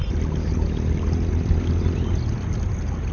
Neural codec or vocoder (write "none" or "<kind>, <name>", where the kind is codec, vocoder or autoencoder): none